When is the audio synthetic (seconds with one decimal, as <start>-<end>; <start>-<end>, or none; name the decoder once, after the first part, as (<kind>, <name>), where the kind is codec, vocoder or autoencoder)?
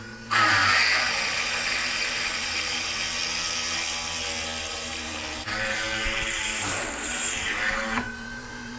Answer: 0.0-3.0 (vocoder, BigVGAN v2); 4.7-8.8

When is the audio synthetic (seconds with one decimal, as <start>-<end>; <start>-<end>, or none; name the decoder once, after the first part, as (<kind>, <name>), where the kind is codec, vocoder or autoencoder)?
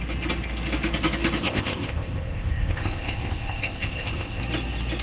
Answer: 1.4-4.4 (codec, ZipCodec)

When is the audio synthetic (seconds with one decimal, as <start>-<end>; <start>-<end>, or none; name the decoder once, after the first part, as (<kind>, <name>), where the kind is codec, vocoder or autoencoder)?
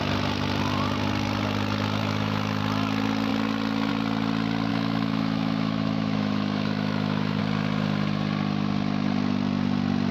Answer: 2.0-2.6 (autoencoder, DAC-VAE); 4.7-7.4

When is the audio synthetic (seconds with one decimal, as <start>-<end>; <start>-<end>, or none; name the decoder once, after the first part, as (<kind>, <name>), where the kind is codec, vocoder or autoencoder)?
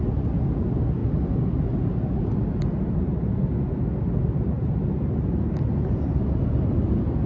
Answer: none